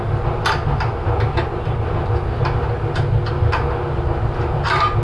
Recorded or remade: recorded